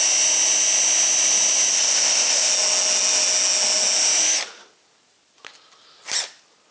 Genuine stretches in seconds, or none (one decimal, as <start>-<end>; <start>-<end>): 0.0-1.7; 2.5-6.7